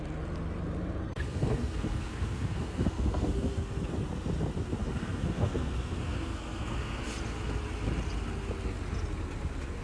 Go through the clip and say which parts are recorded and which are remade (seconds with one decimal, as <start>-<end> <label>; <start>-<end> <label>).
0.0-1.0 recorded; 1.0-3.9 remade; 3.9-4.8 recorded; 4.8-7.0 remade; 7.0-9.8 recorded